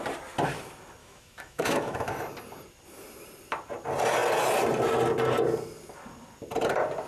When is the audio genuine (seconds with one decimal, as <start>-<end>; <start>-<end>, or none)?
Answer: 0.0-1.0; 2.1-7.1